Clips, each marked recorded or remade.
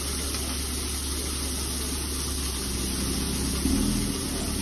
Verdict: recorded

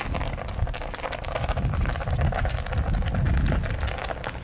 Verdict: recorded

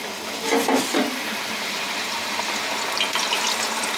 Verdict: recorded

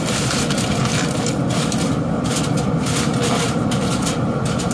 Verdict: recorded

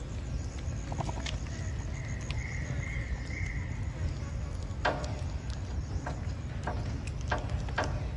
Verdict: recorded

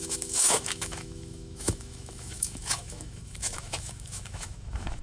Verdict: remade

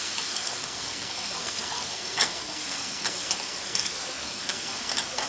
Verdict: remade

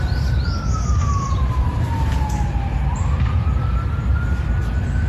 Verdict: recorded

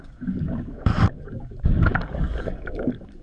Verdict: remade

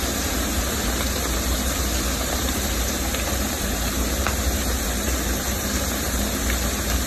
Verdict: remade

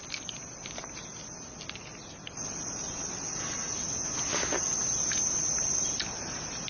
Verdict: recorded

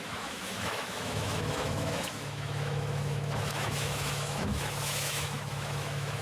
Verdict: remade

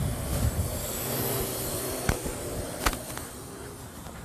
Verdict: recorded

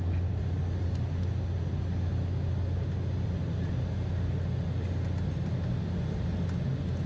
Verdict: recorded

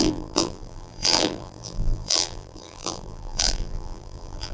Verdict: remade